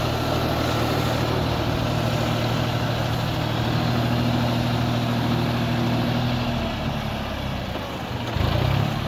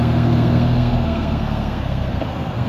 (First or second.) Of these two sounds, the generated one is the second